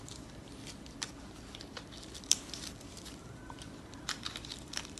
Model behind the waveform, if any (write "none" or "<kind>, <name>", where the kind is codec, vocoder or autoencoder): vocoder, BigVGAN v2